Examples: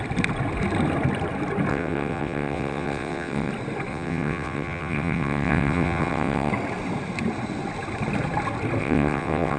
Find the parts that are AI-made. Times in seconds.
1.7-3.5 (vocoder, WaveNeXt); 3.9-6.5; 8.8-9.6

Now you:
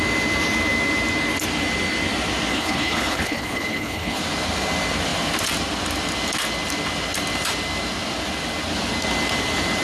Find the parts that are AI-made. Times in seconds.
2.5-4.2 (codec, HILCodec)

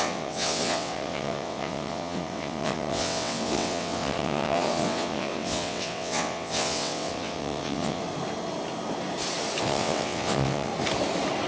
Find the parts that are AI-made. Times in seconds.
0.0-8.0 (vocoder, WaveNeXt); 9.6-10.7

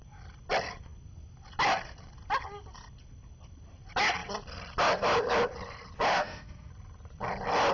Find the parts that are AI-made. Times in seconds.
6.1-6.7 (autoencoder, DAC-VAE)

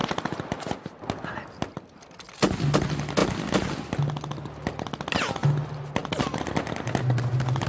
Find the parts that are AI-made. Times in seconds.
none